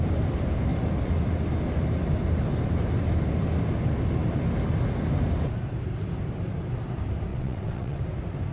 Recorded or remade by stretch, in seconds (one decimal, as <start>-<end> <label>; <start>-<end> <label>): 0.0-7.3 recorded; 7.3-8.0 remade; 8.0-8.5 recorded